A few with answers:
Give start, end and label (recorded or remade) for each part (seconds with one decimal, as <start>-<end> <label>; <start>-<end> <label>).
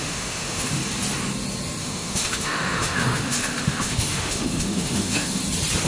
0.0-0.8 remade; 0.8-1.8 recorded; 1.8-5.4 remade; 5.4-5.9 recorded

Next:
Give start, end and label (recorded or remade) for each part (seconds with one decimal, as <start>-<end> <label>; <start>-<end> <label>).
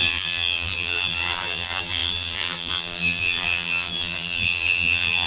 0.0-5.3 remade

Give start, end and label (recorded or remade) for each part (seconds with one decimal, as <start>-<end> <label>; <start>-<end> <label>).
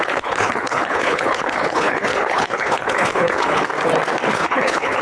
0.0-3.7 remade; 3.7-4.3 recorded; 4.3-5.0 remade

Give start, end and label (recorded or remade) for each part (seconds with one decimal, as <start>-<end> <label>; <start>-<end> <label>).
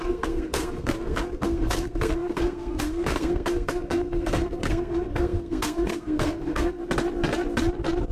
0.0-6.8 remade; 6.8-8.1 recorded